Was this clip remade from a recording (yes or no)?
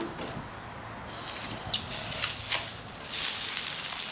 no